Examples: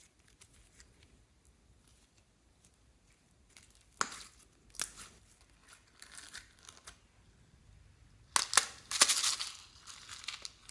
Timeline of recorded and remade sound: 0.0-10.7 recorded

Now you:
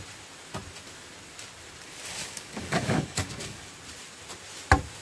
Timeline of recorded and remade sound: 0.0-2.2 recorded; 2.2-3.7 remade; 3.7-5.0 recorded

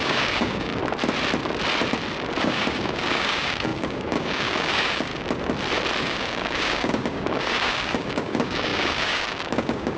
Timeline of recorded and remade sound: 0.0-0.7 remade; 0.7-2.4 recorded; 2.4-5.1 remade; 5.1-6.0 recorded; 6.0-10.0 remade